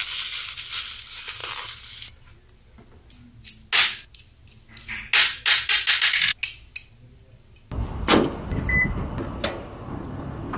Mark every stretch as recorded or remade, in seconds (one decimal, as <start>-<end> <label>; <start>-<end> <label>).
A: 0.0-10.6 recorded